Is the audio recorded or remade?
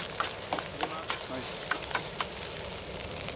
recorded